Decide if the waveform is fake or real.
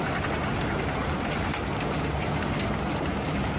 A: real